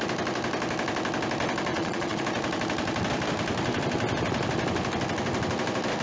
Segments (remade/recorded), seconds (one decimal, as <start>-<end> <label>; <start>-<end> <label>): 0.0-1.7 recorded; 1.7-2.2 remade; 2.2-6.0 recorded